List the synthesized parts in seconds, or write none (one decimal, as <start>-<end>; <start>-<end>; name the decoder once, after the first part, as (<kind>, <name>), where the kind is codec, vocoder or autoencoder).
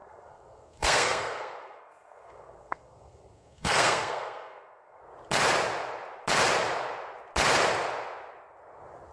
0.0-5.0 (codec, SNAC)